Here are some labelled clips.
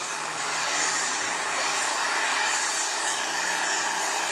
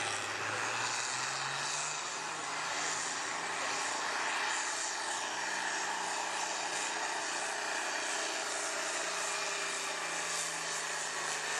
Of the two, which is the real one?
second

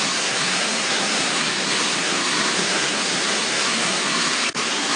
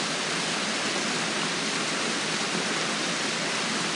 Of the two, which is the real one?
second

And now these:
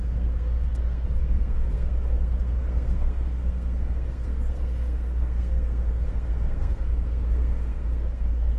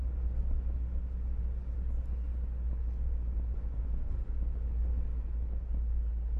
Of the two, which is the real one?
second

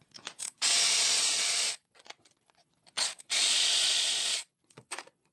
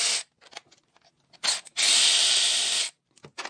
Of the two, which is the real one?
second